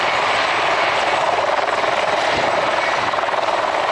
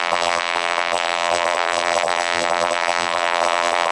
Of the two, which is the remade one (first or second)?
second